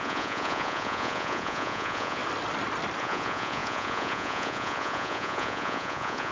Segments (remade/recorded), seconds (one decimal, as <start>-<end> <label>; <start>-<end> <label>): 0.0-2.2 remade; 2.2-3.0 recorded; 3.0-6.3 remade